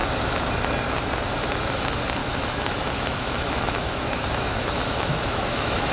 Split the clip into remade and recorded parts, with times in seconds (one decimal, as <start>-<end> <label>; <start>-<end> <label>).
0.0-2.2 recorded; 2.2-5.9 remade